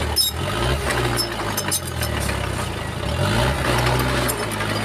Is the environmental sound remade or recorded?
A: recorded